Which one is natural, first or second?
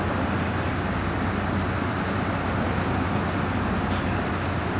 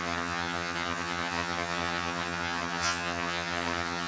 first